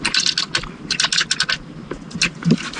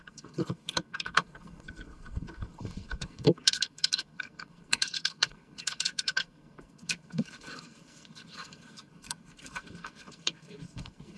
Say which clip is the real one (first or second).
first